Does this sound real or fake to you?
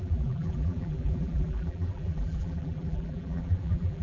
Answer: fake